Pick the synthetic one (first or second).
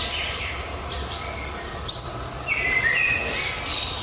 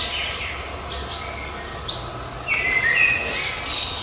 first